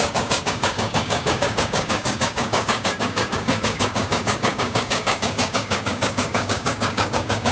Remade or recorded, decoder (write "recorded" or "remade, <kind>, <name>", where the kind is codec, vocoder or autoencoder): remade, codec, DAC